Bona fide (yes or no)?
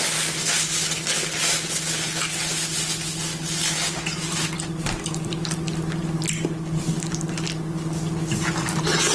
yes